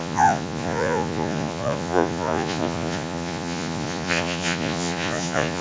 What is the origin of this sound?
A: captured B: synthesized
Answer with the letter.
B